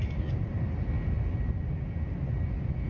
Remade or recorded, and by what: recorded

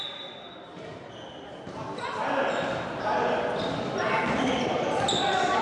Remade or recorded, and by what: recorded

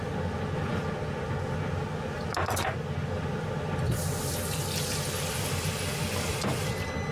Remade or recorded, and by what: recorded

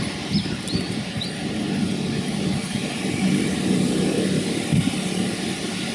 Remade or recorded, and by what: recorded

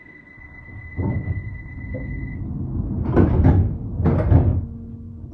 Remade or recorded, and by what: recorded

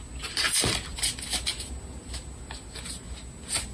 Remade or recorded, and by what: recorded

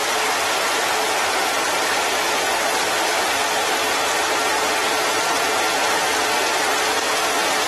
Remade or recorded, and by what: recorded